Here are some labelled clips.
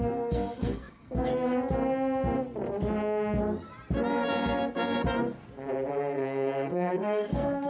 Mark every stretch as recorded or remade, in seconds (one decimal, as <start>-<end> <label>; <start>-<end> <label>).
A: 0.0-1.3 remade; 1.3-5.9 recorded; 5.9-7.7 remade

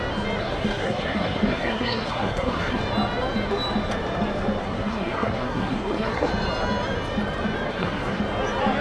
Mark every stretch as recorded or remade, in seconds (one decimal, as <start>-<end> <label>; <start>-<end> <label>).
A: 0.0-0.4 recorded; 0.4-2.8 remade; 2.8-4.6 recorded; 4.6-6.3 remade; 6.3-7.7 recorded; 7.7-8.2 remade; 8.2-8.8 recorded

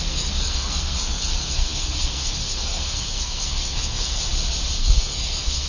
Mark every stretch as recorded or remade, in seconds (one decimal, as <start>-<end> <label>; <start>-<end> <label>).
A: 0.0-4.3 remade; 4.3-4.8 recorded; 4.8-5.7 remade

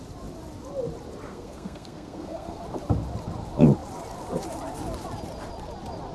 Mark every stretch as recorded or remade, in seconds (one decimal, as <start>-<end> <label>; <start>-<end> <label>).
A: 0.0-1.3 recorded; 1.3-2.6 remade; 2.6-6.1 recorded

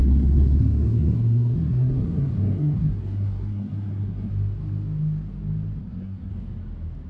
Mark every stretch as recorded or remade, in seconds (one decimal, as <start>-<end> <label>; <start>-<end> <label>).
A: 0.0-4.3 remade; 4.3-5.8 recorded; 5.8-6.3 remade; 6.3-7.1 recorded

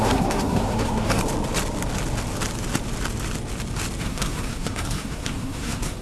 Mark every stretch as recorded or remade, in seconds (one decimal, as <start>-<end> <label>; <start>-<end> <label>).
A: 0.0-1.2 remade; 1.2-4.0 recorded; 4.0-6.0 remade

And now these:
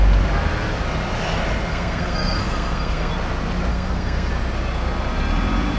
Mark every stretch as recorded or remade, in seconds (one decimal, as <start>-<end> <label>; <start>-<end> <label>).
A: 0.0-1.7 recorded; 1.7-3.1 remade; 3.1-3.7 recorded; 3.7-4.3 remade; 4.3-5.8 recorded